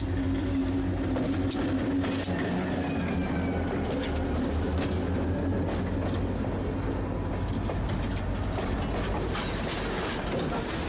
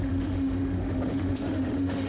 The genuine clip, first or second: first